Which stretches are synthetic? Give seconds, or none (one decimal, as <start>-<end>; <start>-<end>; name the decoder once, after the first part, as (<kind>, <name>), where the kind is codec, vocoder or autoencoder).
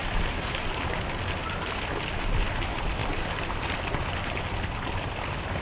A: none